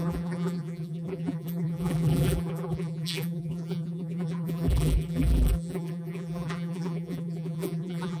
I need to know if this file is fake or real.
fake